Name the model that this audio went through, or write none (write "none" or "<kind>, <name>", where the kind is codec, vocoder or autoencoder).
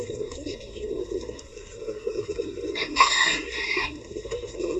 codec, SNAC